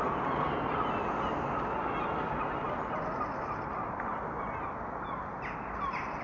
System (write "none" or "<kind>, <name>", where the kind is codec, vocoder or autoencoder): none